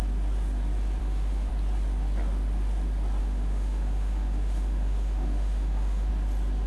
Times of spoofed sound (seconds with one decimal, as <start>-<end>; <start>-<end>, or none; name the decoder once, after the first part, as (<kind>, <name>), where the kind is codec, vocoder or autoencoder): 1.0-1.5 (autoencoder, DAC-VAE); 3.2-6.1